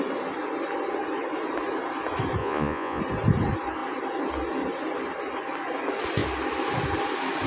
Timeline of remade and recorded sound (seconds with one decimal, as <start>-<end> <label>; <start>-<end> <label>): 0.0-2.4 recorded; 2.4-3.0 remade; 3.0-7.5 recorded

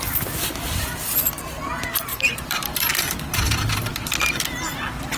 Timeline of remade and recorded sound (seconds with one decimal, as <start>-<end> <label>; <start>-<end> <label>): 0.0-2.1 recorded; 2.1-3.9 remade; 3.9-5.2 recorded

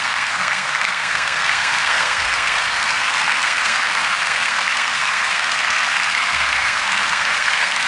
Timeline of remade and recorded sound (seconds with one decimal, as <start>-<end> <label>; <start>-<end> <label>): 0.0-7.9 remade

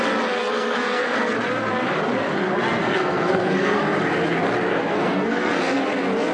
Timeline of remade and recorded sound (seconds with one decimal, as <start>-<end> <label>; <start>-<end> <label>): 0.0-0.4 recorded; 0.4-1.3 remade; 1.3-2.8 recorded; 2.8-3.8 remade; 3.8-4.7 recorded; 4.7-5.6 remade; 5.6-6.3 recorded

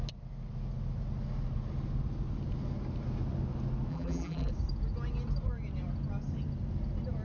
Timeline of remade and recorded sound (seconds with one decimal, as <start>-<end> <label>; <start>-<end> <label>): 0.0-3.9 recorded; 3.9-4.5 remade; 4.5-7.2 recorded

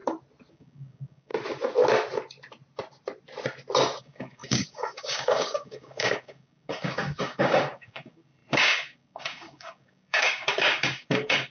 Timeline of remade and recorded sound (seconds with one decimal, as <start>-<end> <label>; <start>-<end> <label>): 0.0-0.5 recorded; 0.5-1.3 remade; 1.3-4.0 recorded; 4.0-11.5 remade

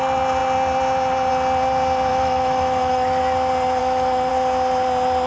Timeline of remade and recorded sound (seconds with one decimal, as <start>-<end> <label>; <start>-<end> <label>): 0.0-2.1 recorded; 2.1-3.2 remade; 3.2-3.8 recorded; 3.8-4.3 remade; 4.3-5.3 recorded